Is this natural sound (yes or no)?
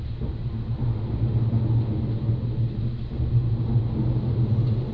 yes